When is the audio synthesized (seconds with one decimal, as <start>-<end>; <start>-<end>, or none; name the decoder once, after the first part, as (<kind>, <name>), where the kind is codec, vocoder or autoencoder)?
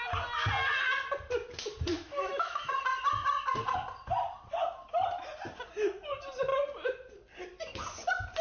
1.9-2.8 (autoencoder, DAC-VAE)